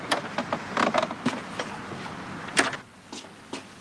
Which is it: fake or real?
real